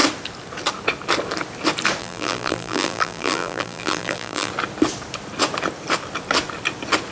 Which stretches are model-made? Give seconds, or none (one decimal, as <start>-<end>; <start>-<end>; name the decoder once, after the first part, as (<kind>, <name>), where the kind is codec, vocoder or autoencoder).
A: 2.0-4.5 (vocoder, BigVGAN v2)